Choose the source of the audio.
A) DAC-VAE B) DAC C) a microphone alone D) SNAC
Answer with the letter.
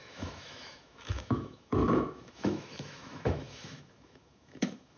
A